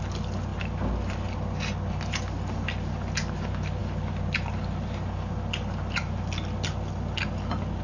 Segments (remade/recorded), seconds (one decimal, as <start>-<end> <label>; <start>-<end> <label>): 0.0-7.8 recorded